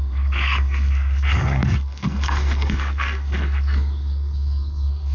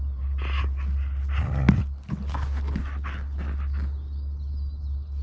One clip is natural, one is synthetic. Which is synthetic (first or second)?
first